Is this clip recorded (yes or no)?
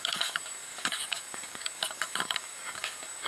no